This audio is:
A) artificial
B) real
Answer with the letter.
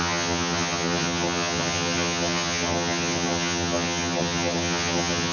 A